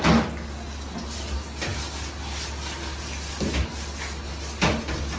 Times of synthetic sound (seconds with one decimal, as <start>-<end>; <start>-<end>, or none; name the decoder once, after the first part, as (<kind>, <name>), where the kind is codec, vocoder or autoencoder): none